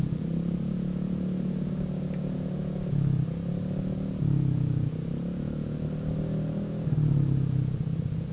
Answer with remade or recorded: recorded